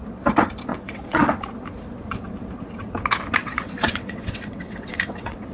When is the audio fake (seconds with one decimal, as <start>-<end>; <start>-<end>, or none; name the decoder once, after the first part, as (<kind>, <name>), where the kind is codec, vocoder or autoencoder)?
0.7-1.3 (vocoder, WaveNeXt); 3.4-5.5